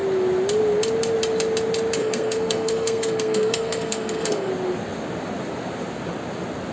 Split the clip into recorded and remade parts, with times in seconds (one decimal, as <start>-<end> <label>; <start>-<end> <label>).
0.0-2.0 recorded; 2.0-4.5 remade; 4.5-6.7 recorded